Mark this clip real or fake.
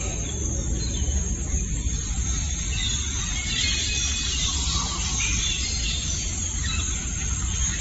real